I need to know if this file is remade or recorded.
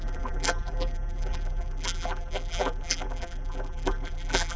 remade